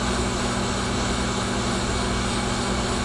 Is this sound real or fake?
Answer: real